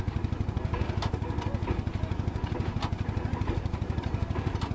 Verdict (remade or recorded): recorded